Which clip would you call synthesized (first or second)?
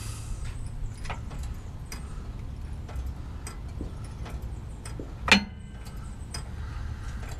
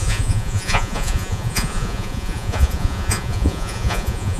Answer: second